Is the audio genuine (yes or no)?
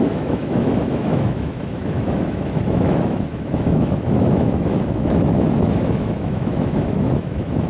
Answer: no